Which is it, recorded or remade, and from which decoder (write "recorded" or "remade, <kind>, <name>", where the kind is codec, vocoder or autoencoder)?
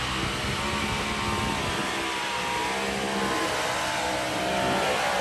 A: recorded